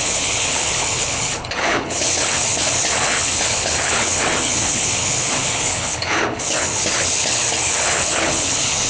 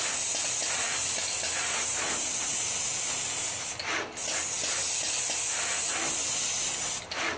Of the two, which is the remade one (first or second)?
first